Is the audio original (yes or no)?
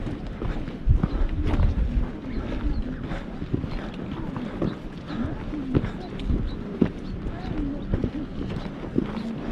yes